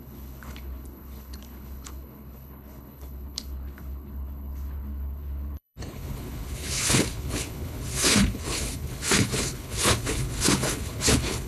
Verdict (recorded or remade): remade